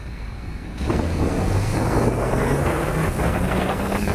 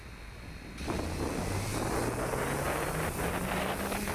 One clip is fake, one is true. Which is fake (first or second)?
first